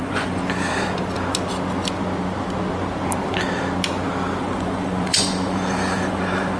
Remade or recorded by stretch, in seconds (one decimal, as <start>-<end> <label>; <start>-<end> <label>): 0.0-0.4 remade; 0.4-4.4 recorded; 4.4-6.6 remade